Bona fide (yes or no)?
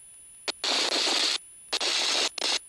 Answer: yes